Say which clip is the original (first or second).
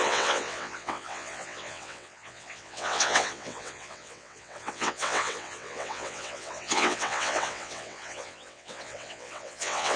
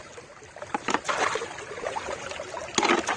second